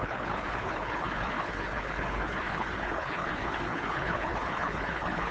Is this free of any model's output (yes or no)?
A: no